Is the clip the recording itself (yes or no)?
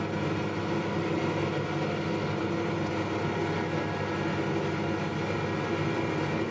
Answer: yes